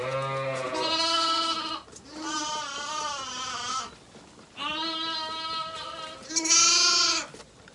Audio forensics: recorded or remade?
recorded